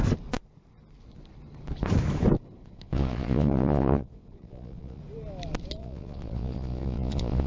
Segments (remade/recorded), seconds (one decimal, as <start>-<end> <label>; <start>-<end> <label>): 0.0-2.6 recorded; 2.6-5.0 remade; 5.0-5.8 recorded; 5.8-7.5 remade